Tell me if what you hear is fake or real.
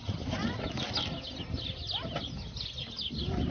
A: real